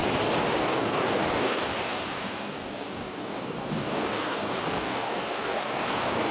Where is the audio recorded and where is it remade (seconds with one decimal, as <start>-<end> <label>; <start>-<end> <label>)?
0.0-0.6 recorded; 0.6-6.3 remade

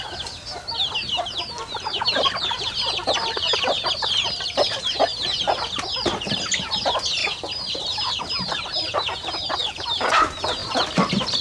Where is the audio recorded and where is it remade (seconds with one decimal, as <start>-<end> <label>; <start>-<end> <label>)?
0.0-11.4 recorded

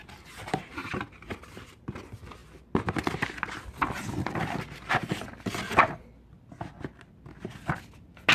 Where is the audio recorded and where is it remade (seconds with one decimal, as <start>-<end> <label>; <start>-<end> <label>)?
0.0-0.8 recorded; 0.8-1.8 remade; 1.8-8.3 recorded

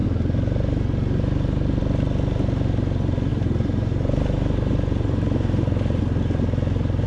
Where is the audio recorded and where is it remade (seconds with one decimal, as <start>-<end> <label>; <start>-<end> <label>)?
0.0-3.3 recorded; 3.3-6.0 remade; 6.0-7.1 recorded

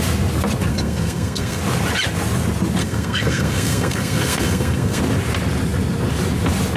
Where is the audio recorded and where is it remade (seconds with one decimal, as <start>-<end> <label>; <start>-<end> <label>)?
0.0-0.7 recorded; 0.7-1.6 remade; 1.6-2.8 recorded; 2.8-5.0 remade; 5.0-6.8 recorded

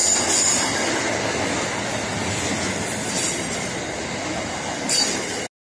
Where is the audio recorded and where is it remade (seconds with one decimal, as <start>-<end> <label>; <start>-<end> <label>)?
0.0-5.7 recorded